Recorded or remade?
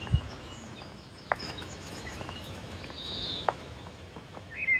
remade